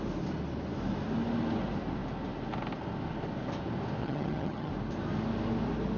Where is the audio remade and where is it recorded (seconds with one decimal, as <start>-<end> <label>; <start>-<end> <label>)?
0.0-4.0 recorded; 4.0-4.7 remade; 4.7-6.0 recorded